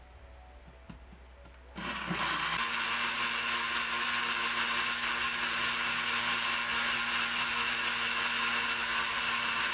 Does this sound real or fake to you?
real